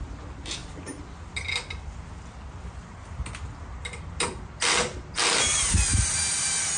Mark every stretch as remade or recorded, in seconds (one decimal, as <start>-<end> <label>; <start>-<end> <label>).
0.0-6.8 recorded